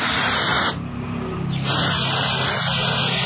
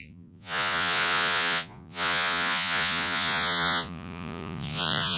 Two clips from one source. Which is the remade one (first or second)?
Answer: second